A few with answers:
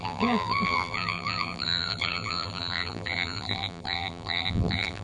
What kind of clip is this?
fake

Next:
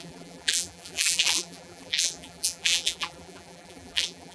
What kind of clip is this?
fake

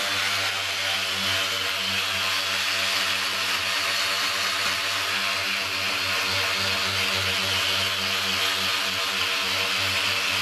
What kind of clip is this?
real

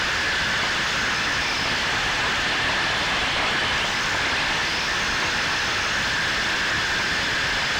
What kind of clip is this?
real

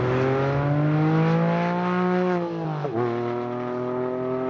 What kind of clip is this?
real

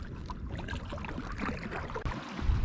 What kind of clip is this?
real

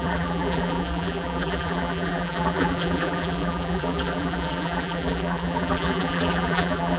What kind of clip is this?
fake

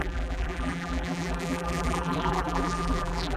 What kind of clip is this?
fake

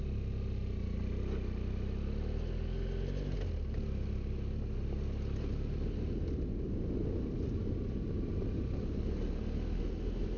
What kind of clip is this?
real